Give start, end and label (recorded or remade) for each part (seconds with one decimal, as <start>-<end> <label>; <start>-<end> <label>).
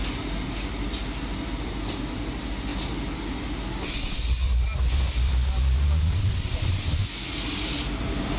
0.0-8.4 recorded